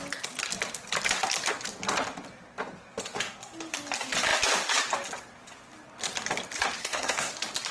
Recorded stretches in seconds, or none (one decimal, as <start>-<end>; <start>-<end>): 0.0-6.8; 7.3-7.7